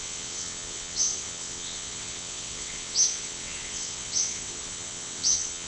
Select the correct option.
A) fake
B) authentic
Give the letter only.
A